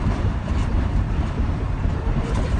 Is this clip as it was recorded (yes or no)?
no